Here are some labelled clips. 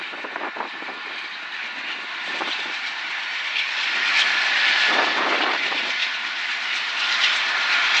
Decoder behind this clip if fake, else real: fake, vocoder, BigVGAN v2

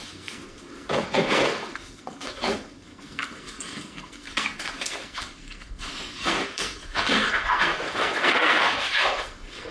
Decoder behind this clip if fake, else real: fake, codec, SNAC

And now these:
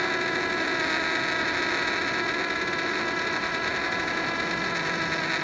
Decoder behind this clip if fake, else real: real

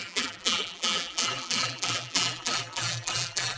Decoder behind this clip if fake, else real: fake, vocoder, BigVGAN v2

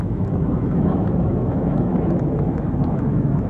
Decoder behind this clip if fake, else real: fake, autoencoder, DAC-VAE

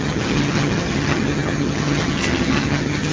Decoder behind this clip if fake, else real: fake, vocoder, HiFi-GAN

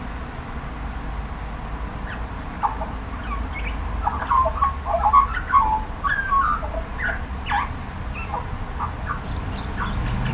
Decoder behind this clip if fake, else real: real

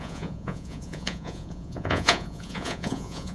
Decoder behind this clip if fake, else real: fake, vocoder, Vocos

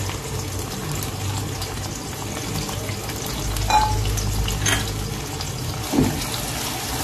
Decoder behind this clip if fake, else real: real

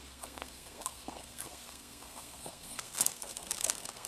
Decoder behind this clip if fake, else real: fake, codec, SNAC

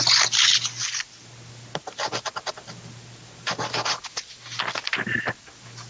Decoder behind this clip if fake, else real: real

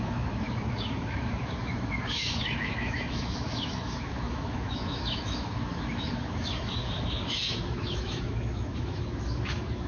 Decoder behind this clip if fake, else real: fake, autoencoder, DAC-VAE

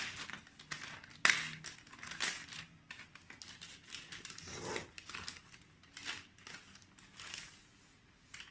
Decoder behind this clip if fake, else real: real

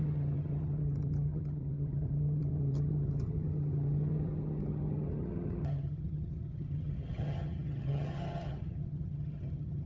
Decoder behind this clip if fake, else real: fake, vocoder, HiFi-GAN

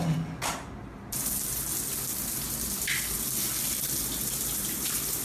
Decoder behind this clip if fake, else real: real